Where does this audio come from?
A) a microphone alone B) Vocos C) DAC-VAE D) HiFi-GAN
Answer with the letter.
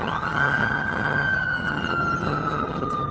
D